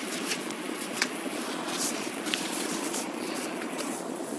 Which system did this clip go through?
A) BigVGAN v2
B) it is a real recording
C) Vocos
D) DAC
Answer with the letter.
C